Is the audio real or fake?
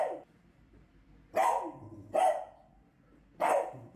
real